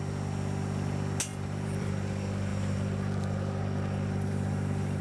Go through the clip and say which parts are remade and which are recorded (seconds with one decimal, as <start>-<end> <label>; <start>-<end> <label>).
0.0-1.3 recorded; 1.3-1.9 remade; 1.9-2.5 recorded; 2.5-5.0 remade